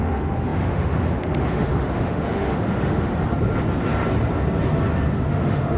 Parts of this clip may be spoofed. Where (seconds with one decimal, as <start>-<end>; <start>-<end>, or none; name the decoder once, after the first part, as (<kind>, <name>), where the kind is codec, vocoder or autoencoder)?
0.0-3.1 (autoencoder, DAC-VAE); 5.3-5.8